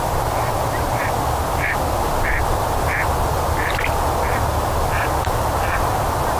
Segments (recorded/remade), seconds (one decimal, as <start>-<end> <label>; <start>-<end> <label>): 0.0-6.4 recorded